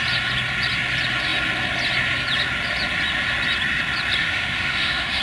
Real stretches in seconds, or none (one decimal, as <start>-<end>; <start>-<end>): 0.0-4.2